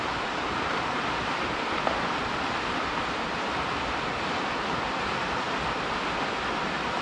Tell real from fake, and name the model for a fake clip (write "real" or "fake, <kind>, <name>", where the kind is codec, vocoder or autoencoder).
real